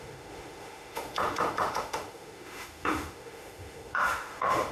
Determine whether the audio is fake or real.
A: fake